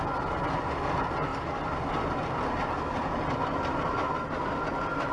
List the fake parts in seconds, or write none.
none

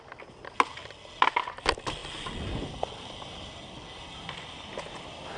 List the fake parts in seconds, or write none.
none